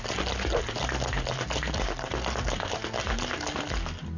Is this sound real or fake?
real